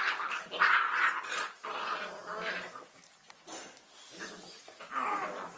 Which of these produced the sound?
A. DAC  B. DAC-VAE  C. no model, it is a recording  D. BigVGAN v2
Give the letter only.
C